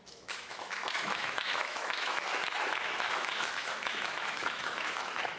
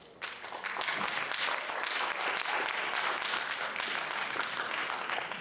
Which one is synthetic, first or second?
first